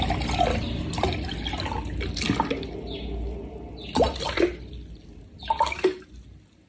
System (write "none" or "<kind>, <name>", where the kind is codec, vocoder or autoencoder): none